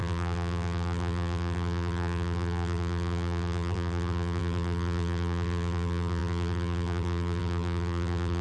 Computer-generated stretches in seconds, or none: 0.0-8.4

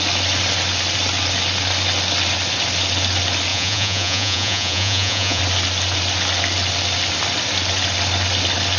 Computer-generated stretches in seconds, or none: 3.5-5.4